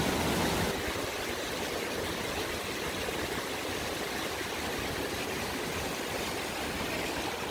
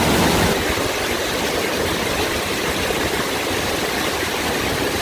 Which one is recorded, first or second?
first